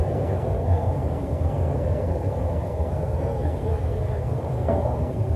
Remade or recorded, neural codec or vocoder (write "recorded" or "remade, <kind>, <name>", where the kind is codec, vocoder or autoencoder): remade, codec, SNAC